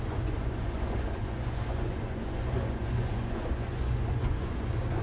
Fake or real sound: fake